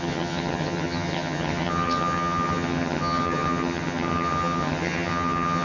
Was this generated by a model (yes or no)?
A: yes